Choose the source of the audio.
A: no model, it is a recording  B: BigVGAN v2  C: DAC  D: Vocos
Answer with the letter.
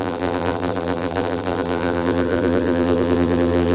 B